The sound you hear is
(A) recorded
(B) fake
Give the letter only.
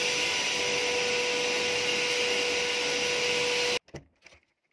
A